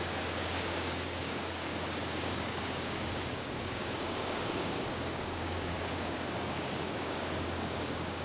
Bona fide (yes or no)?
no